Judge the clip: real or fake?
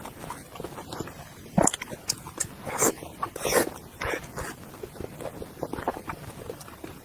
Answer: real